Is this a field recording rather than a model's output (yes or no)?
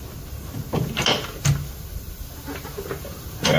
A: yes